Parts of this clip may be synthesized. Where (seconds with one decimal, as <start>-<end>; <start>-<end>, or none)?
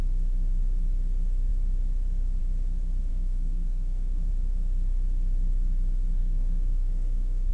3.1-4.3; 6.2-7.5